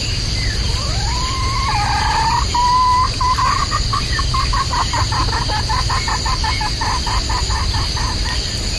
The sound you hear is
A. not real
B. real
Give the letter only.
B